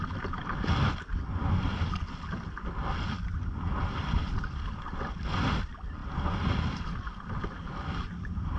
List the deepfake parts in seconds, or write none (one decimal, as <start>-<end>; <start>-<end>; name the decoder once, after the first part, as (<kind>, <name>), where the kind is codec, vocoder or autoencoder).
none